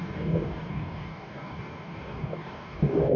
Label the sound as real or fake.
fake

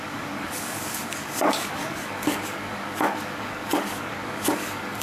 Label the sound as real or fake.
fake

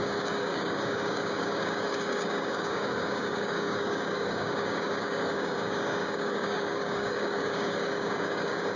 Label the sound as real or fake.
fake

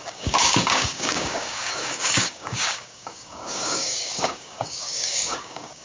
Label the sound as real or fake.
fake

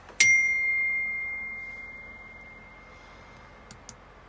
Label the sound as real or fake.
real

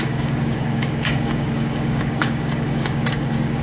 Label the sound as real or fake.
fake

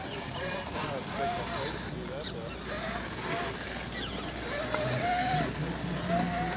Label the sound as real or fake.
real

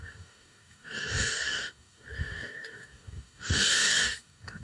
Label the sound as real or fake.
fake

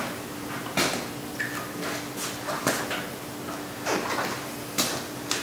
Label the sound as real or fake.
real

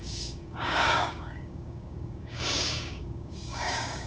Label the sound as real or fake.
fake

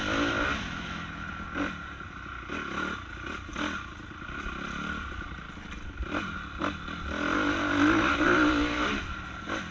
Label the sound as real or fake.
real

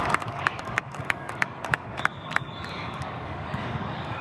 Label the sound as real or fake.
fake